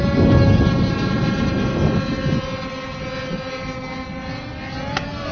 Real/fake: real